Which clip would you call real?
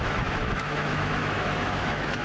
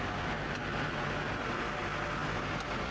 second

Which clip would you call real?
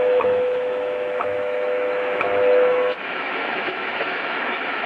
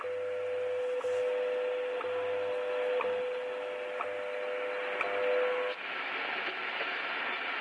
second